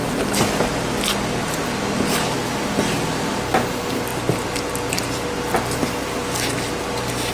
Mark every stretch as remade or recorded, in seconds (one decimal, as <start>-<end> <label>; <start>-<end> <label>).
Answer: 0.0-7.3 recorded

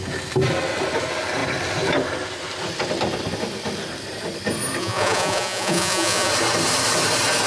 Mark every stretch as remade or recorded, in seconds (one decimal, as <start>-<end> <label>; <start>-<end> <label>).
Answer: 0.0-4.8 recorded; 4.8-6.3 remade; 6.3-7.5 recorded

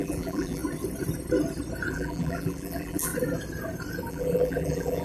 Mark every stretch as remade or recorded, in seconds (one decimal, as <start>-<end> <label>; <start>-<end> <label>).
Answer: 0.0-0.6 remade; 0.6-1.9 recorded; 1.9-3.1 remade; 3.1-4.1 recorded; 4.1-5.0 remade